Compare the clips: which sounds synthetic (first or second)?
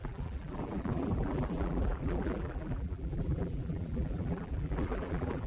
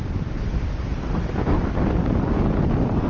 first